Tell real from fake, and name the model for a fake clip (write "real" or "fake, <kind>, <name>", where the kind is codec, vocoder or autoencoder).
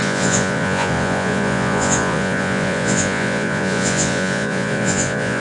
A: fake, vocoder, Vocos